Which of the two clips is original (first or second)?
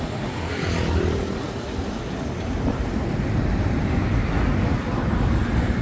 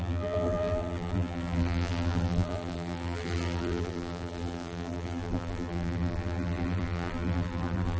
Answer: first